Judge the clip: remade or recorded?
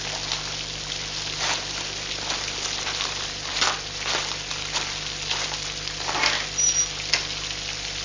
recorded